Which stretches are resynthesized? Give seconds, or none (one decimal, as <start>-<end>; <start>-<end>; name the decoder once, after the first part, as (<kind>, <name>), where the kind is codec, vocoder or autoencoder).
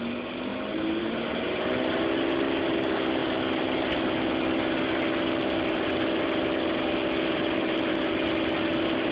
none